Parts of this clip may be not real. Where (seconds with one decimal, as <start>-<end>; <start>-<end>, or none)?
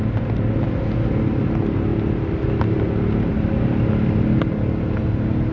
none